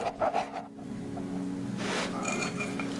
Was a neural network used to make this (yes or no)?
no